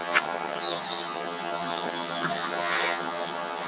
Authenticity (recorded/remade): remade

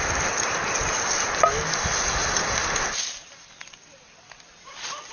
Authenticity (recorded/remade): recorded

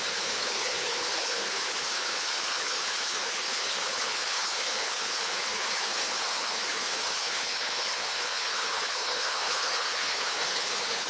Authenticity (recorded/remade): remade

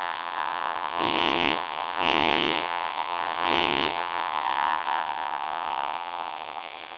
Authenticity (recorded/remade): remade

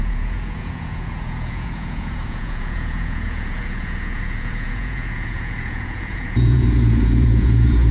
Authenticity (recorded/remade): remade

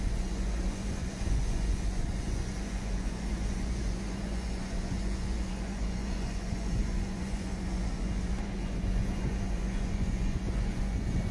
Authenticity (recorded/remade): remade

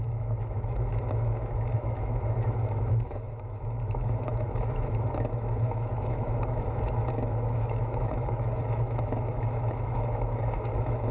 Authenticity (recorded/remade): remade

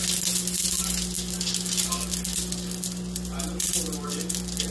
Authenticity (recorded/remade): recorded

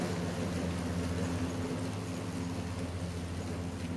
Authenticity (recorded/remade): recorded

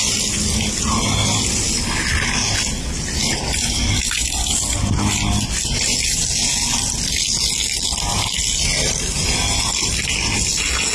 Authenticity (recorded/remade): recorded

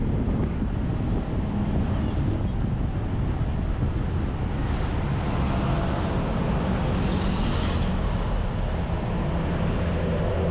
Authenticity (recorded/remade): recorded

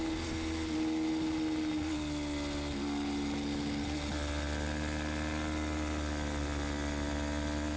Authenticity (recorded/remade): recorded